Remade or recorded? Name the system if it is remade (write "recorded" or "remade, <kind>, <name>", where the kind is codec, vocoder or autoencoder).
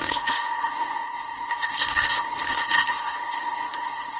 remade, codec, SNAC